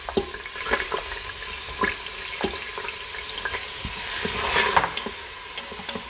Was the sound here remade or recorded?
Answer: recorded